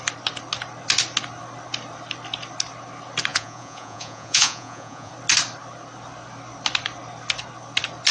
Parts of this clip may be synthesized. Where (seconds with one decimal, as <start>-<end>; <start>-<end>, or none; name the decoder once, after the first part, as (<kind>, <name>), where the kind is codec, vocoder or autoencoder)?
3.3-5.1 (vocoder, Vocos)